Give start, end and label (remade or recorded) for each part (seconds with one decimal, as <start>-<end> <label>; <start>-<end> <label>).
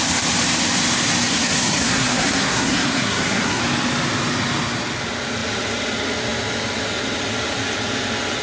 0.0-1.3 recorded; 1.3-3.6 remade; 3.6-8.4 recorded